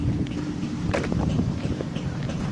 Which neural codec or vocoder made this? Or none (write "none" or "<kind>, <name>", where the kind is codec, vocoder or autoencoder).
vocoder, BigVGAN v2